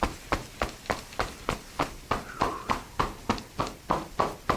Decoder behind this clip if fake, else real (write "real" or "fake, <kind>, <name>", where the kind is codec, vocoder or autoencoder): real